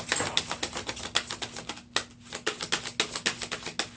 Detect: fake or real real